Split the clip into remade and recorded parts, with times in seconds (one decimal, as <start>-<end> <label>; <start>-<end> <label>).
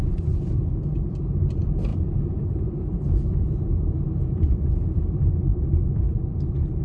0.0-6.8 remade